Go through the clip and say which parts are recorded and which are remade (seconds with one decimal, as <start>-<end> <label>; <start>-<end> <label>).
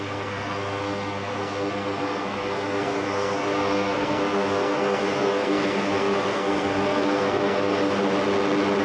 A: 0.0-7.7 remade; 7.7-8.8 recorded